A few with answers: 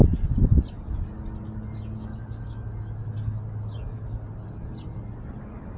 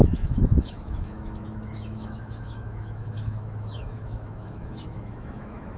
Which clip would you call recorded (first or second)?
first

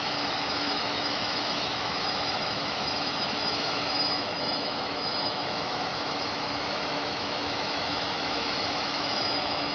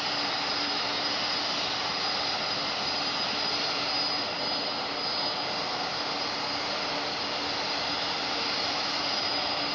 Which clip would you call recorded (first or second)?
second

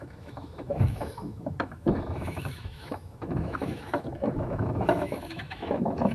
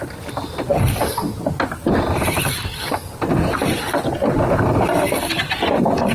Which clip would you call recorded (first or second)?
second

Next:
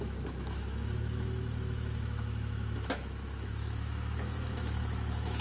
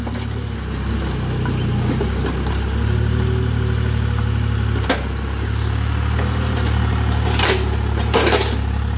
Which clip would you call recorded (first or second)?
second